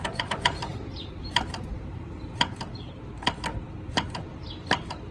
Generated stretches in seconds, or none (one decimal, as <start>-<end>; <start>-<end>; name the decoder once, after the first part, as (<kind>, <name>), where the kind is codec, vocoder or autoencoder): 0.7-2.4 (vocoder, BigVGAN v2)